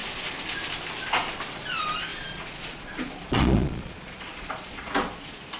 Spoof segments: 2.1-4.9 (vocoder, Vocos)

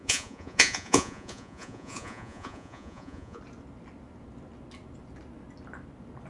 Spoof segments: 0.0-3.4 (vocoder, Vocos)

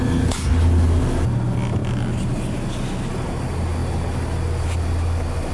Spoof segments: none

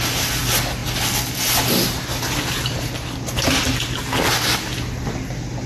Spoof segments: none

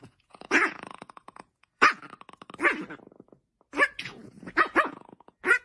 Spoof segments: 0.0-2.0 (vocoder, Vocos); 4.0-5.6

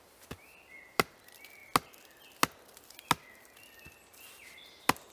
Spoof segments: none

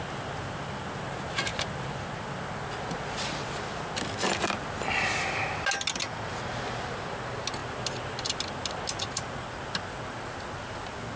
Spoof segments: none